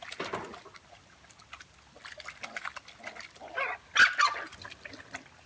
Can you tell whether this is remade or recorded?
recorded